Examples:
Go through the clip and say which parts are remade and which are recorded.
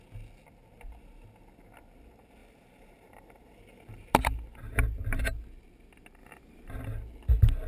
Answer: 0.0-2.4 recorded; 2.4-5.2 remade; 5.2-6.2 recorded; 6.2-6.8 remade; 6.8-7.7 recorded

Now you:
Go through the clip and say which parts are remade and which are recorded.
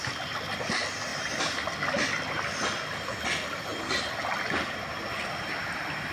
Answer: 0.0-3.7 remade; 3.7-6.1 recorded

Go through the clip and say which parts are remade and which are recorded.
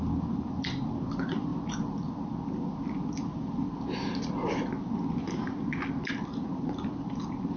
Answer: 0.0-7.6 recorded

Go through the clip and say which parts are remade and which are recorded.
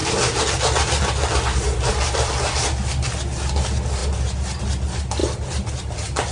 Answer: 0.0-6.3 recorded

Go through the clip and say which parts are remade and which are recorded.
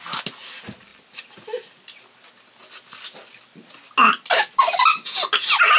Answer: 0.0-5.8 recorded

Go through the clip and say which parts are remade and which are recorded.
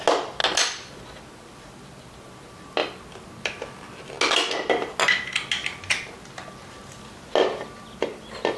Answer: 0.0-8.6 recorded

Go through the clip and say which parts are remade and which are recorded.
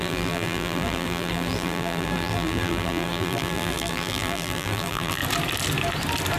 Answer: 0.0-5.2 remade; 5.2-6.4 recorded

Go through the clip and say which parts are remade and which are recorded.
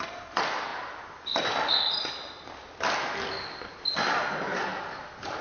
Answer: 0.0-5.4 recorded